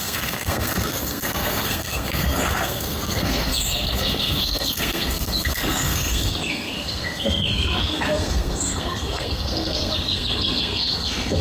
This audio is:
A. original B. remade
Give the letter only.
B